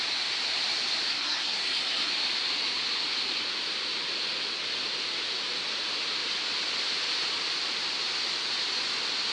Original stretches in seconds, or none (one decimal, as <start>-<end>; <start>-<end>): 0.0-1.1; 2.1-9.3